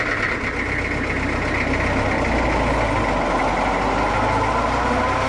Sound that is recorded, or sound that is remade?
recorded